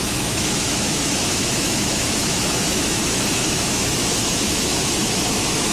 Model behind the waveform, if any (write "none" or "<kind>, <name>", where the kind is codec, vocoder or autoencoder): autoencoder, DAC-VAE